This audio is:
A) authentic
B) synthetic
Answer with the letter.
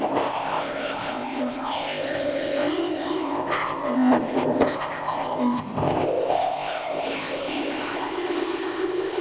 B